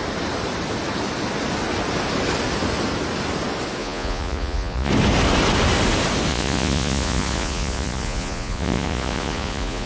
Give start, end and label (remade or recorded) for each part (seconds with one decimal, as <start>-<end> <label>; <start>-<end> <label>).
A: 0.0-3.8 recorded; 3.8-4.9 remade; 4.9-6.3 recorded; 6.3-9.9 remade